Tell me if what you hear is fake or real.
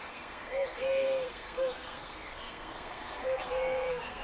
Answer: fake